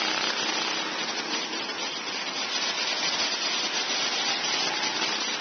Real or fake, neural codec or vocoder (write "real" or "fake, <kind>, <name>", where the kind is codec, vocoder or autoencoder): real